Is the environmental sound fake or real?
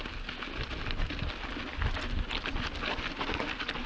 real